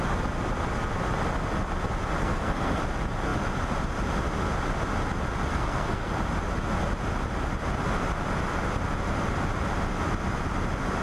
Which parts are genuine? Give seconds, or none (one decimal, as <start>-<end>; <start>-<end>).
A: 0.0-2.2; 2.8-5.5; 6.1-11.0